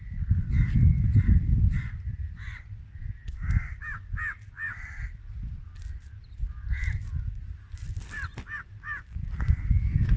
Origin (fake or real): real